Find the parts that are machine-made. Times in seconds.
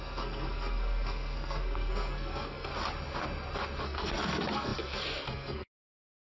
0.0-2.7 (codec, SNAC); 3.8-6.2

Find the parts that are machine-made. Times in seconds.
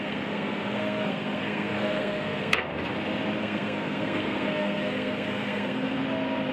0.0-2.7 (codec, SNAC); 3.4-6.0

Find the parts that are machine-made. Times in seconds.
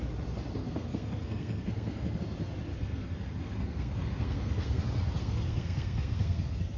0.6-2.2 (codec, SNAC); 2.7-4.8; 5.2-6.8